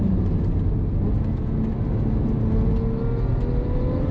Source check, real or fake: real